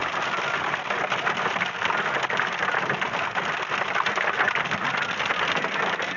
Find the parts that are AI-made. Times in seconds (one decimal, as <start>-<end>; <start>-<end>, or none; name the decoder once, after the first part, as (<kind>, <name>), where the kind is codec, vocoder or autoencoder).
0.0-3.7 (vocoder, BigVGAN v2)